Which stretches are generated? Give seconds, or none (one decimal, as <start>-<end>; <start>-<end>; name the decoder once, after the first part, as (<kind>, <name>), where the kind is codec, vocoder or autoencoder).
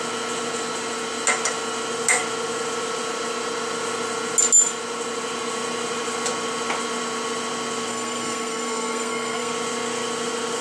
7.9-9.5 (codec, SNAC)